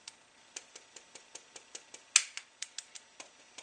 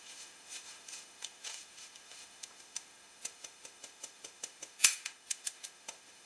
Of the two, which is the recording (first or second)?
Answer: first